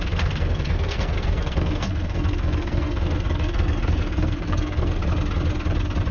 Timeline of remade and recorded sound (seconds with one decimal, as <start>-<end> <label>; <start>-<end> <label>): 0.0-5.0 remade; 5.0-6.1 recorded